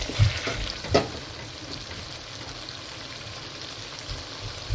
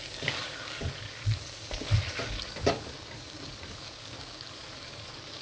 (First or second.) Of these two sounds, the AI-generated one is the second